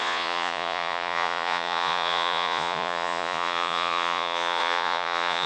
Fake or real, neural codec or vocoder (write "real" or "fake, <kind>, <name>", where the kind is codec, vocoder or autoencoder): fake, vocoder, Vocos